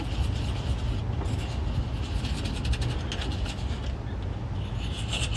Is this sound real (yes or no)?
yes